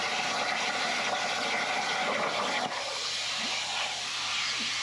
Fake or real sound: real